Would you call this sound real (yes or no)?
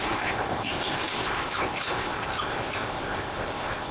no